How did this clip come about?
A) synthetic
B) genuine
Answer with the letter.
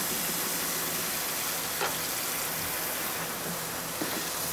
B